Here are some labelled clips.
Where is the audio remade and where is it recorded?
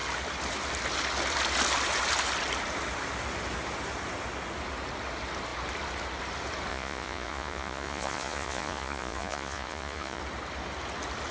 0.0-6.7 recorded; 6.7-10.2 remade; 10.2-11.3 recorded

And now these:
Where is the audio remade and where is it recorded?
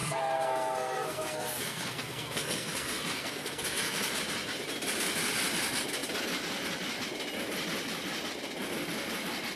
0.0-4.2 remade; 4.2-9.6 recorded